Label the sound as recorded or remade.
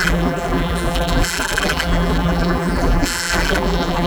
remade